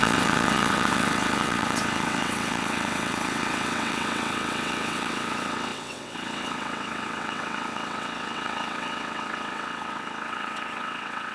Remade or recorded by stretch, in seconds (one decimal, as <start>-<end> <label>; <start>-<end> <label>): 0.0-11.3 remade